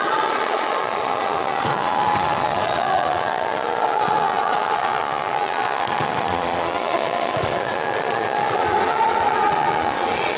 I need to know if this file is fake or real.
fake